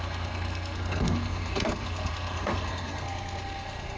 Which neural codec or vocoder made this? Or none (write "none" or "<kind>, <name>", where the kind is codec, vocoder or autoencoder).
codec, SNAC